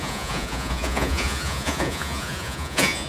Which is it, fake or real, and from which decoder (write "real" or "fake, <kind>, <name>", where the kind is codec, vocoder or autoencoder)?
fake, vocoder, Vocos